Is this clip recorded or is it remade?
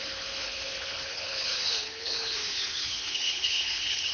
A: remade